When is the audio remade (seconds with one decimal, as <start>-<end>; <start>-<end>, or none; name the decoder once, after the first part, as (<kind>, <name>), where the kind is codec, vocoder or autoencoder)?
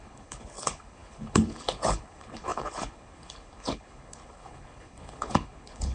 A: 0.0-5.9 (codec, HILCodec)